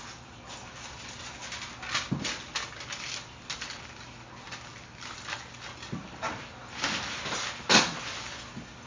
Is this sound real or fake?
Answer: real